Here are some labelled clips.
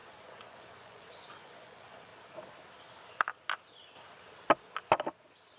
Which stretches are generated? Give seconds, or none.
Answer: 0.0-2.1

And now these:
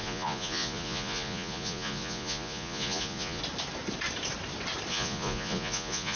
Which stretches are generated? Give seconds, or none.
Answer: 0.0-3.4; 4.9-6.2

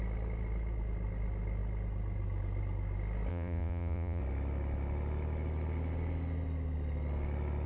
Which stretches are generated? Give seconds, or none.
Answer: 3.3-4.2